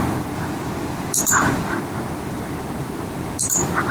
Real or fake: fake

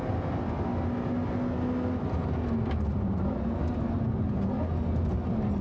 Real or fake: real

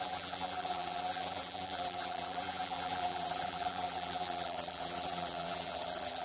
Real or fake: fake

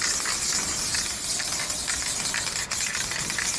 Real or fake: real